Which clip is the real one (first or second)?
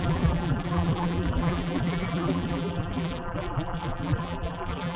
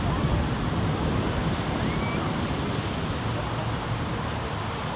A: second